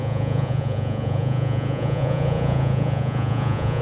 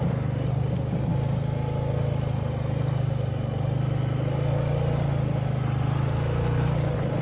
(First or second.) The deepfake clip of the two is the first